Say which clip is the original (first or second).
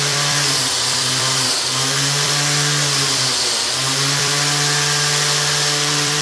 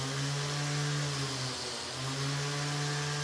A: second